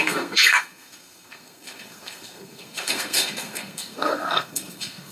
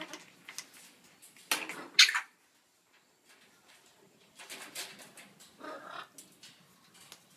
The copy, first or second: first